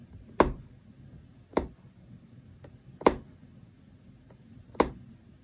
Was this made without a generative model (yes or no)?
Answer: yes